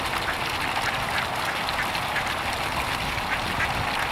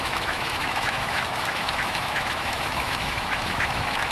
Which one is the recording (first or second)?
first